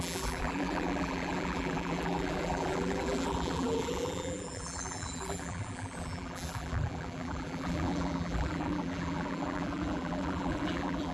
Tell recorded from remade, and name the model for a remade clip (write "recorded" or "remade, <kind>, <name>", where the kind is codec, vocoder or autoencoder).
remade, vocoder, BigVGAN v2